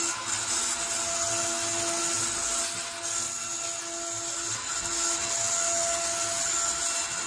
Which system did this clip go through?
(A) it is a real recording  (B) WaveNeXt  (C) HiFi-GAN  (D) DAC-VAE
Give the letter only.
A